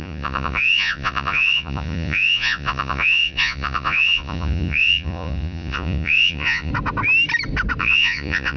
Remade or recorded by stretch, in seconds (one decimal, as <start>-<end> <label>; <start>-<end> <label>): 0.0-6.7 remade; 6.7-7.8 recorded; 7.8-8.6 remade

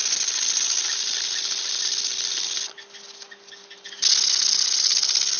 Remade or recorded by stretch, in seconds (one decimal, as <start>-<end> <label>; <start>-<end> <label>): 0.0-5.4 recorded